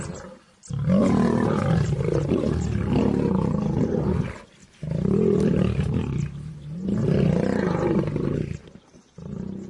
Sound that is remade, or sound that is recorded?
recorded